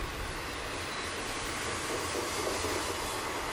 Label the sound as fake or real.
real